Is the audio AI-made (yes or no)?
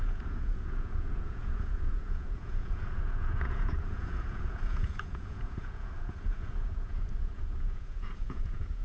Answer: yes